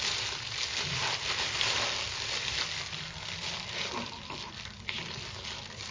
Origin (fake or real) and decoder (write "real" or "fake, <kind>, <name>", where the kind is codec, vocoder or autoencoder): real